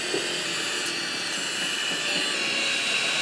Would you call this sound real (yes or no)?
yes